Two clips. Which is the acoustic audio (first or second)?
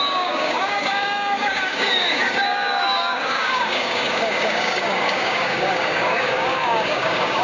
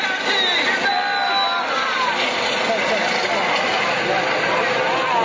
second